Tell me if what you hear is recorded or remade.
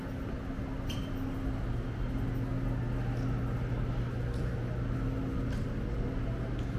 recorded